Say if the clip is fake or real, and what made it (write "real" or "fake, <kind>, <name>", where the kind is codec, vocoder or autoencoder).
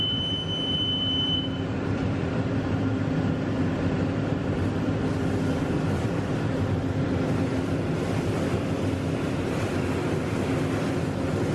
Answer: real